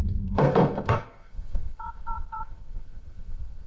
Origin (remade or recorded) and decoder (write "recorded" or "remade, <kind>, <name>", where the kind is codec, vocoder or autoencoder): remade, codec, SNAC